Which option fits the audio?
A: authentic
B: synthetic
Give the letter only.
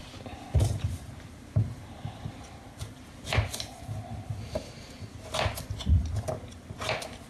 A